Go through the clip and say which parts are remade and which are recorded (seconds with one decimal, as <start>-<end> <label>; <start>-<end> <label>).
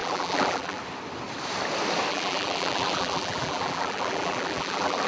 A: 0.0-0.8 remade; 0.8-2.1 recorded; 2.1-5.1 remade